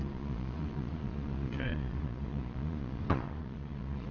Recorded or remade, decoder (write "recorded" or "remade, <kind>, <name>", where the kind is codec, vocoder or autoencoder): remade, vocoder, Vocos